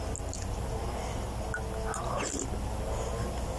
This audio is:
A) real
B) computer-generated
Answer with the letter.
A